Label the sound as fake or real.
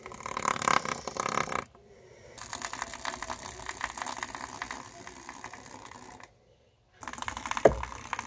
real